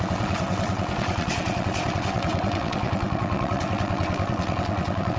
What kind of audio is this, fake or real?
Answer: fake